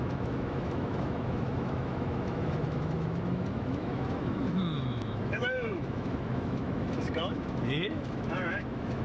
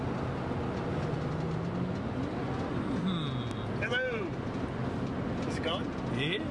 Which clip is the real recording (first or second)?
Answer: second